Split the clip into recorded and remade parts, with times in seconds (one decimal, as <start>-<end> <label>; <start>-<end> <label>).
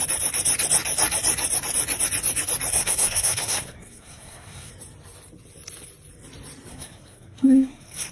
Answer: 0.0-2.7 recorded; 2.7-4.7 remade; 4.7-6.7 recorded; 6.7-8.1 remade